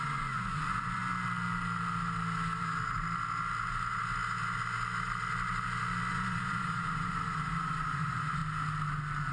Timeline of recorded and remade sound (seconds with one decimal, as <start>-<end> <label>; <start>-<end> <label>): 0.0-1.0 remade; 1.0-6.1 recorded; 6.1-8.4 remade; 8.4-9.3 recorded